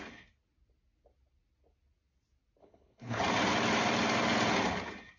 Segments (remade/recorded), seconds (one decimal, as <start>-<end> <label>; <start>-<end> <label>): 0.0-2.6 recorded; 2.6-3.2 remade; 3.2-5.2 recorded